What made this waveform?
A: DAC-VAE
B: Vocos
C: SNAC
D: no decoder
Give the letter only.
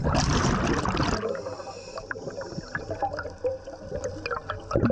D